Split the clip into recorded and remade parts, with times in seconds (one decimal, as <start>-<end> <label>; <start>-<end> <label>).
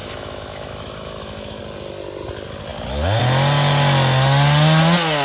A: 0.0-1.6 remade; 1.6-5.2 recorded